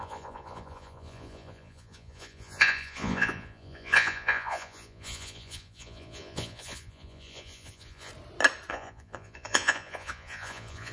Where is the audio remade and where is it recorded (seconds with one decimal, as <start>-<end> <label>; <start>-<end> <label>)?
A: 0.0-8.1 remade; 8.1-8.7 recorded; 8.7-10.9 remade